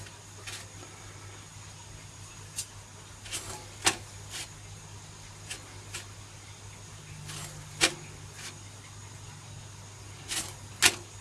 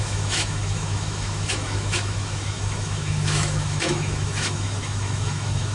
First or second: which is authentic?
first